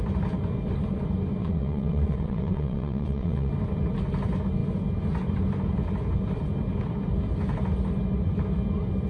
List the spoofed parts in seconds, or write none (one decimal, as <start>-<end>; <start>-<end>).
1.4-3.5